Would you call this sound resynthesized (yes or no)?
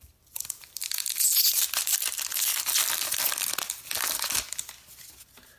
no